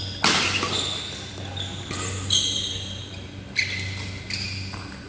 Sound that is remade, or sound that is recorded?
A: recorded